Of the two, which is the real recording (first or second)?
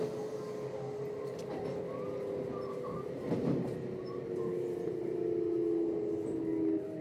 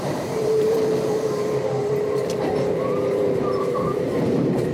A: first